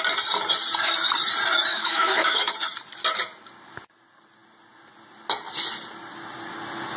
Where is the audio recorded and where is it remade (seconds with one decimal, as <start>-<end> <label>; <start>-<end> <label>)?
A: 0.0-1.7 recorded; 1.7-2.5 remade; 2.5-7.0 recorded